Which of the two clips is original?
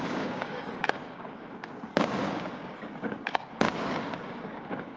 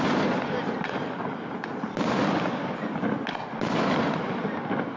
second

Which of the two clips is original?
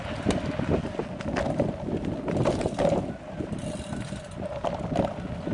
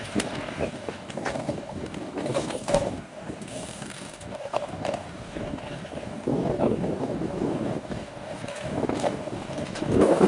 first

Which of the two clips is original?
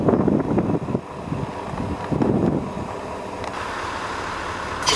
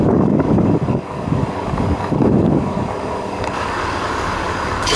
first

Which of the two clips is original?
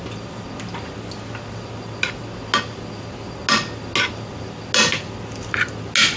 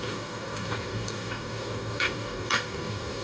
first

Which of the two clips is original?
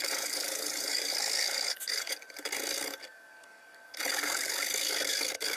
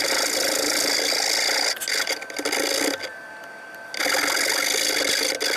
second